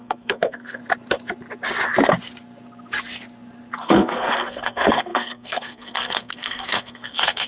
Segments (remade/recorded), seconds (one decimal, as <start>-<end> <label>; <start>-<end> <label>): 0.0-0.8 remade; 0.8-3.8 recorded; 3.8-7.5 remade